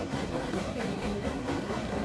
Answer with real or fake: fake